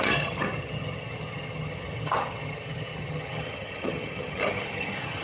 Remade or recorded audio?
remade